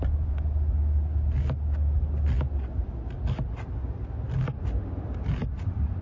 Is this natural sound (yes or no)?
yes